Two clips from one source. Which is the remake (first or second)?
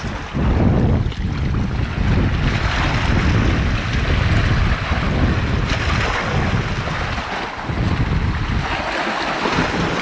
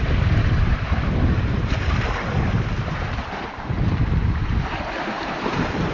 second